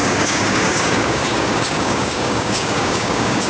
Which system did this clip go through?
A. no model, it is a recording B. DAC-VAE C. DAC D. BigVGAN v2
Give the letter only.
C